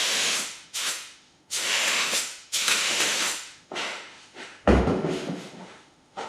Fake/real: fake